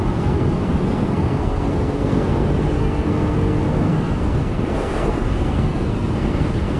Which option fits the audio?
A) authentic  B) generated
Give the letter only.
B